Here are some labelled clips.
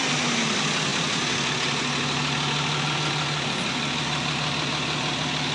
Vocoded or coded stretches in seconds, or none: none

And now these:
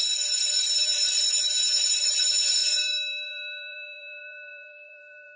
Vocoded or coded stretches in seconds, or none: 0.0-5.4 (vocoder, BigVGAN v2)

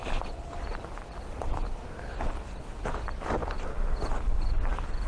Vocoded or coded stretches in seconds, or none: 0.0-2.6 (vocoder, BigVGAN v2)